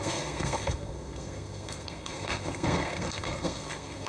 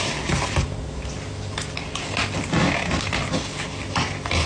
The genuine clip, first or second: second